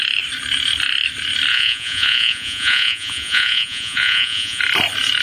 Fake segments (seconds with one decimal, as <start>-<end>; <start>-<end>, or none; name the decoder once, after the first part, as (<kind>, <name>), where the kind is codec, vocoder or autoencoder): 1.5-4.6 (vocoder, Vocos)